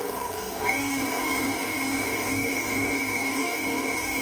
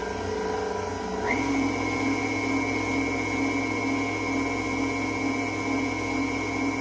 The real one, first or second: second